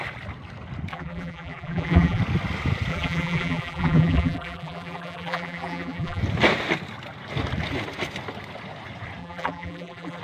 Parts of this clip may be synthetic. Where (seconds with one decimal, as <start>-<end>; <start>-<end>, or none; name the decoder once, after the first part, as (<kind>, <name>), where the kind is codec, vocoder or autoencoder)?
0.9-2.2 (vocoder, BigVGAN v2); 2.9-6.2; 9.2-10.2